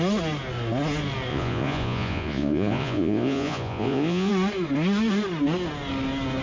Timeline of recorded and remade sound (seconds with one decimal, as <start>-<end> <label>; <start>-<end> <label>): 0.0-1.3 recorded; 1.3-4.3 remade; 4.3-6.4 recorded